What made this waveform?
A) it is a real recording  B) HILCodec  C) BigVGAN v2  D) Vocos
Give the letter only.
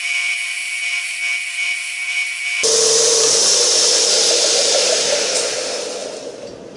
C